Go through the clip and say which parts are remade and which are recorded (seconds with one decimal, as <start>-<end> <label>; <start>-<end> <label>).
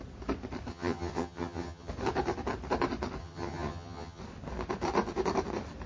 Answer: 0.0-0.7 recorded; 0.7-1.9 remade; 1.9-3.2 recorded; 3.2-4.2 remade; 4.2-5.9 recorded